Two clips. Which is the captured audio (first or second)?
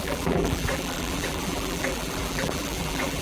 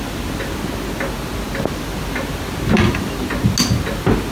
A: second